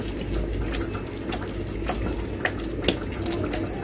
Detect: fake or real real